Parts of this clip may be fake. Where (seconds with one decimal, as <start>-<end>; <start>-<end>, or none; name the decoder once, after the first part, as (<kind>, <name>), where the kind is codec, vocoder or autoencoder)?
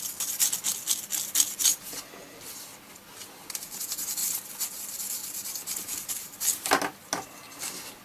none